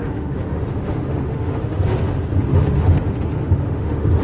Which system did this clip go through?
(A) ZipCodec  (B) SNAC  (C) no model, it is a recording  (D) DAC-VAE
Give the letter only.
D